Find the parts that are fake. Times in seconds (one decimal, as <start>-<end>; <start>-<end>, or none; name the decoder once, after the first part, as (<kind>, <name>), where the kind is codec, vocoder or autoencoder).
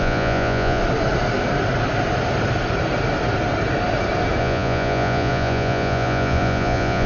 0.0-0.8 (vocoder, Vocos); 4.4-7.1